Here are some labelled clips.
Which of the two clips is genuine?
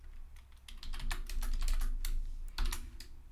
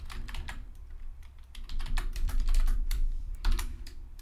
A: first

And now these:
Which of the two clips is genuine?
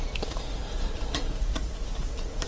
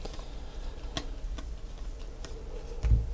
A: second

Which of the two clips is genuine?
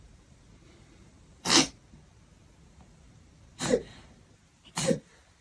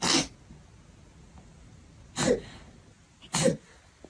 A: second